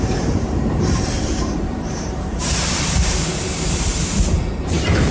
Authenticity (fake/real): fake